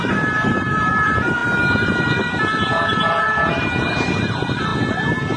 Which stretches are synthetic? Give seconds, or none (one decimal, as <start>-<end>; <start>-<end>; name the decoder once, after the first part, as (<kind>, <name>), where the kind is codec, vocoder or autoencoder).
0.0-4.7 (vocoder, BigVGAN v2)